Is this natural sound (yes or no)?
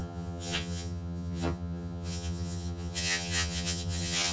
no